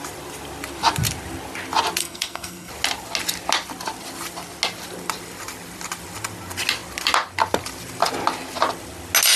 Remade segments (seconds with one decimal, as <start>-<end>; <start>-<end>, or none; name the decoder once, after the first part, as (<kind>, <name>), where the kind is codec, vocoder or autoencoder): 2.0-2.7 (codec, SNAC)